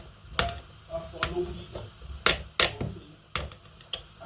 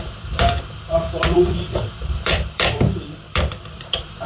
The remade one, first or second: second